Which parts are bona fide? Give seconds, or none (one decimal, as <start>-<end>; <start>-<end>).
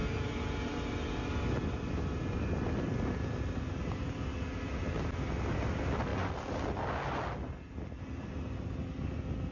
0.0-9.5